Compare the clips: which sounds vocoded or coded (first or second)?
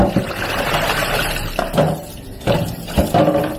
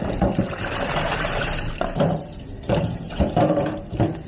second